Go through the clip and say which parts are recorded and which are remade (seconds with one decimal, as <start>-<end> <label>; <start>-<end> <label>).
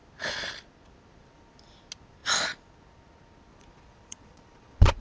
0.0-3.5 recorded; 3.5-5.0 remade